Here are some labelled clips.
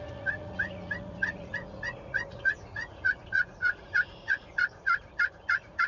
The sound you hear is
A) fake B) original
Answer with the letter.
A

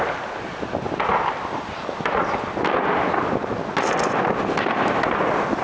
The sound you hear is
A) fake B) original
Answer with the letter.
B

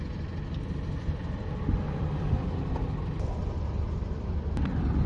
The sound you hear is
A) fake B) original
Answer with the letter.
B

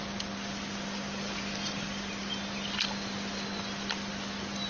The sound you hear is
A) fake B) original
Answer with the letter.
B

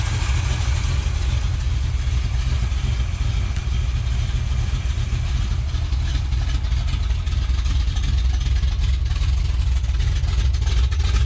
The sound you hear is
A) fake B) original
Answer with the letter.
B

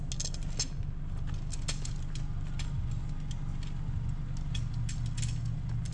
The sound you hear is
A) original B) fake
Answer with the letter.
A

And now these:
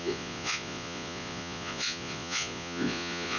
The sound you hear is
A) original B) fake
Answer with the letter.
B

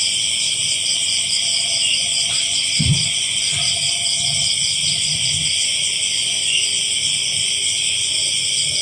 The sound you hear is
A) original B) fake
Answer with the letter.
B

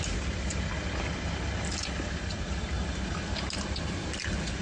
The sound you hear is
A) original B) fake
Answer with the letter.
A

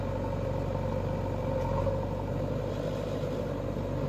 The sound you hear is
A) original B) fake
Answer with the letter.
A